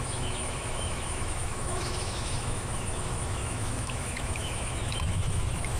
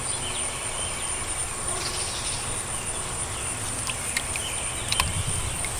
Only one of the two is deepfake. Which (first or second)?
first